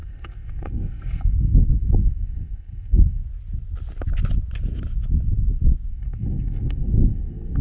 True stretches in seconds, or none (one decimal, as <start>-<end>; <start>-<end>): 3.2-5.9